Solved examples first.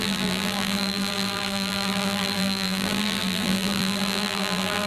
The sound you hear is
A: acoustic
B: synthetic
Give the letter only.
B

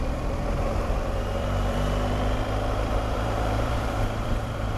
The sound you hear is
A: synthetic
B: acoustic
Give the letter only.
A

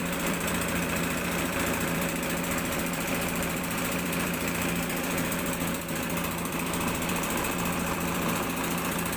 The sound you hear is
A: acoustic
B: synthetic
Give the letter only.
B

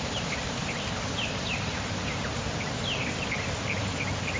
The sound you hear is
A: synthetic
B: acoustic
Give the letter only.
A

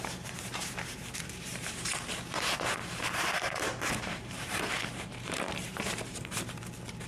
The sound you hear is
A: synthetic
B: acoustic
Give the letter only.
A